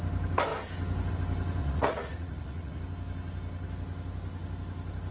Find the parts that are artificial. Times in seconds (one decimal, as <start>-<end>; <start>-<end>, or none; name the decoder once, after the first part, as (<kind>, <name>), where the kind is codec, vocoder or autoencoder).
1.6-2.8 (vocoder, Vocos)